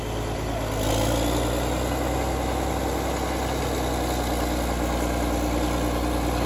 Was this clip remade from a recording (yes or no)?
no